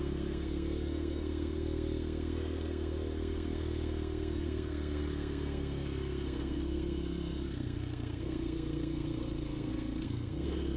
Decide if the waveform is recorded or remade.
remade